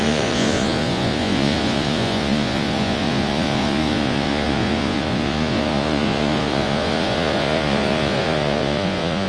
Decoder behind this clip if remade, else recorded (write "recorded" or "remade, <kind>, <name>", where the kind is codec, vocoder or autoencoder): remade, vocoder, Vocos